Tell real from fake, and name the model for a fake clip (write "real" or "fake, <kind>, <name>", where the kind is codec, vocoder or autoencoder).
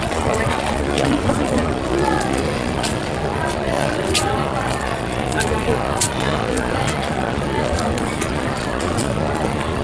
fake, vocoder, Vocos